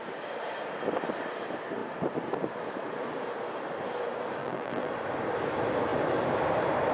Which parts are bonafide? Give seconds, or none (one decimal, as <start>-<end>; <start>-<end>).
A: 0.0-4.4; 4.9-6.9